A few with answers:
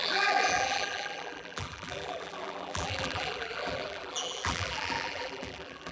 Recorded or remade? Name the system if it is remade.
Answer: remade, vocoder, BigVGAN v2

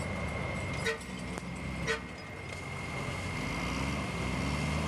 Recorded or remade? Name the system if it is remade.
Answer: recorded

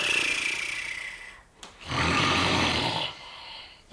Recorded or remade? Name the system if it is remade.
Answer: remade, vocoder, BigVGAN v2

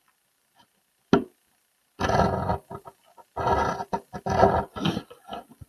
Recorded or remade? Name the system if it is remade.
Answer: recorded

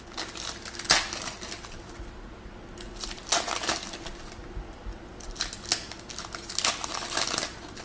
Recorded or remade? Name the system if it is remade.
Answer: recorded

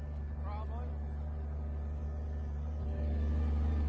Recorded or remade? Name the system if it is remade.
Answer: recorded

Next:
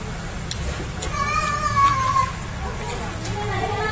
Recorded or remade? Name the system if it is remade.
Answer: recorded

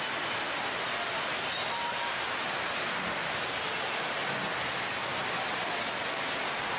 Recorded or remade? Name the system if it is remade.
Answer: recorded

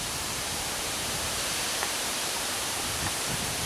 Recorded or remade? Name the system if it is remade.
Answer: remade, vocoder, BigVGAN v2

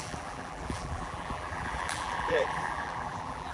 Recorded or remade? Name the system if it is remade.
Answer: remade, vocoder, BigVGAN v2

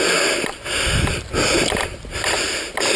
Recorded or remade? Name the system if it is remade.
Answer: recorded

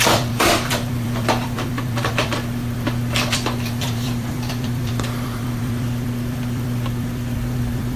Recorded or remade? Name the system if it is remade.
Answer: remade, vocoder, BigVGAN v2